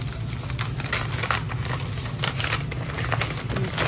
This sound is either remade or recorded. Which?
recorded